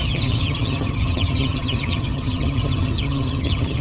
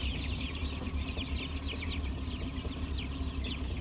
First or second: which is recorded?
second